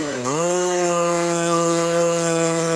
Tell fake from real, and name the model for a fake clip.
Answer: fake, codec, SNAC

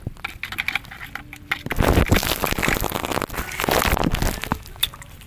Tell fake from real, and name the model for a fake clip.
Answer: real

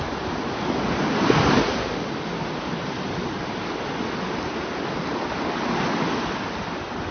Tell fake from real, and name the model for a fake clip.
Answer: real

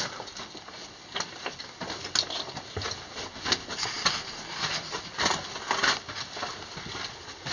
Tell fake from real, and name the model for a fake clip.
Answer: real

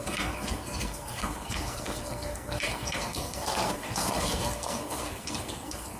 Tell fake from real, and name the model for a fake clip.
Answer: fake, codec, SNAC